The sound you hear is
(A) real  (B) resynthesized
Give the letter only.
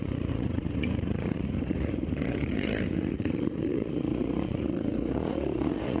B